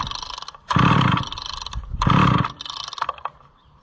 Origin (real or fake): real